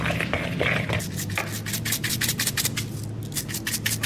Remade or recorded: recorded